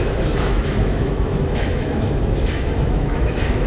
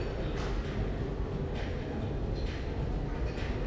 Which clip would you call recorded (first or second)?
second